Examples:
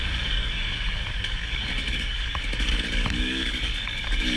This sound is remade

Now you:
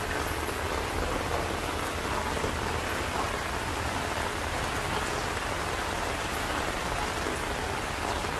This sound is recorded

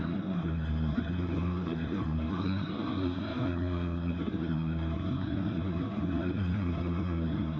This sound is remade